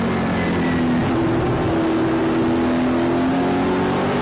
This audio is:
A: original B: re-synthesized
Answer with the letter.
A